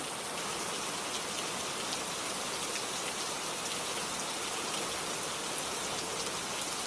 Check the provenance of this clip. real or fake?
real